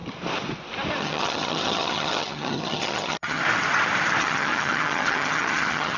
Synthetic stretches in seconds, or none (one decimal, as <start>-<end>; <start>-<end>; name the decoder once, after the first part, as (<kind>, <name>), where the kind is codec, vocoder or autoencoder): 1.0-3.4 (vocoder, HiFi-GAN); 4.2-6.0